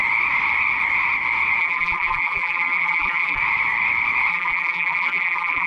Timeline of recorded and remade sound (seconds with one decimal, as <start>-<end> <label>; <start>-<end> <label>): 0.0-1.6 recorded; 1.6-3.4 remade; 3.4-4.3 recorded; 4.3-5.7 remade